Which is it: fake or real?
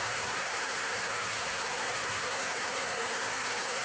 fake